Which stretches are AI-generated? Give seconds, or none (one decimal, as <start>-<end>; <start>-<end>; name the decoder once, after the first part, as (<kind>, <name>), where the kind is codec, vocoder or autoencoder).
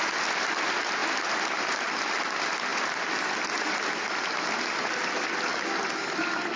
none